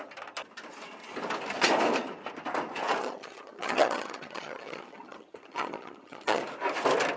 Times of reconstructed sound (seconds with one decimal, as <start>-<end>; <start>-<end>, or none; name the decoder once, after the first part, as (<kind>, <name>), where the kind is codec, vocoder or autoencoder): 3.0-6.4 (vocoder, HiFi-GAN)